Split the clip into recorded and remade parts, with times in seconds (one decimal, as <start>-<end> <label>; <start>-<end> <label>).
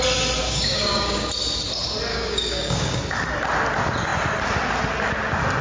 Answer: 0.0-0.4 recorded; 0.4-1.3 remade; 1.3-2.1 recorded; 2.1-3.0 remade; 3.0-5.6 recorded